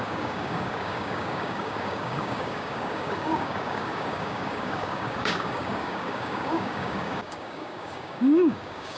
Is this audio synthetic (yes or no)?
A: yes